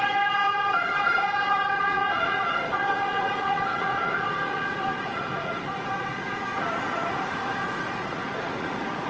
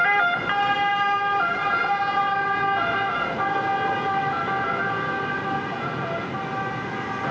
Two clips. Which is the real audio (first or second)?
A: second